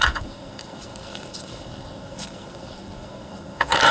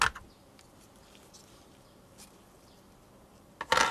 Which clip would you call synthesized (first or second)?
first